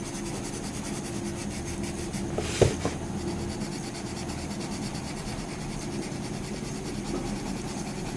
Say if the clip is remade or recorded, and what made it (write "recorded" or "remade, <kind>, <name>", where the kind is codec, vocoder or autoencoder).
recorded